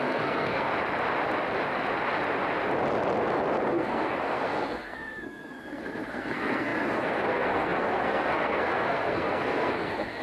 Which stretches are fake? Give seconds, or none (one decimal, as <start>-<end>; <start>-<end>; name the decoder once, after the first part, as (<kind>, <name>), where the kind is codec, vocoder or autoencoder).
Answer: 0.0-0.7 (codec, SNAC); 3.7-10.2